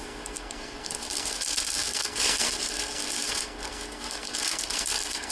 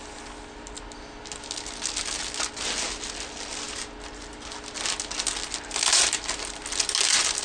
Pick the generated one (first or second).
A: first